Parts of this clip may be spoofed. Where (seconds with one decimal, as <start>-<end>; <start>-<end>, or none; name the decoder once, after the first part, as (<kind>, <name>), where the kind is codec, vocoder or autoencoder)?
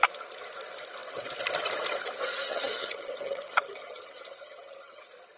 2.4-5.0 (vocoder, HiFi-GAN)